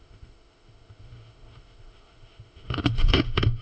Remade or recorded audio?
remade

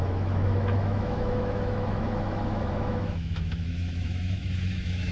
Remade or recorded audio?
remade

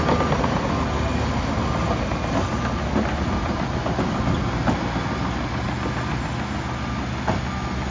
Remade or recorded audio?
recorded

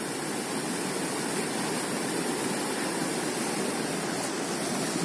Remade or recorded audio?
recorded